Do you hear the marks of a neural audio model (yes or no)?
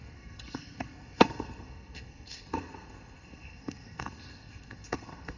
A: yes